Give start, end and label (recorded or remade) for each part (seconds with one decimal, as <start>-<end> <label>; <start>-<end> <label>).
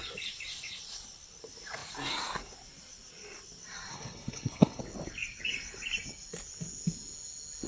0.0-3.9 recorded; 3.9-4.8 remade; 4.8-7.7 recorded